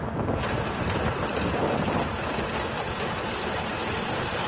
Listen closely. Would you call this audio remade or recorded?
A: recorded